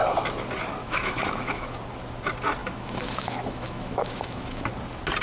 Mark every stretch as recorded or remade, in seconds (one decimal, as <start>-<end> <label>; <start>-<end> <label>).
0.0-0.8 recorded; 0.8-1.8 remade; 1.8-2.6 recorded; 2.6-4.7 remade; 4.7-5.2 recorded